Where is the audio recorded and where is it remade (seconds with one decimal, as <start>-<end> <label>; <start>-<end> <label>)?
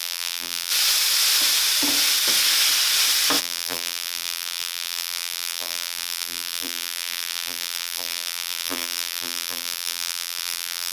0.0-0.7 remade; 0.7-3.4 recorded; 3.4-10.9 remade